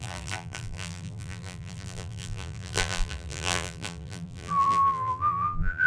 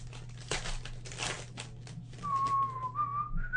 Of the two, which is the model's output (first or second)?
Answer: first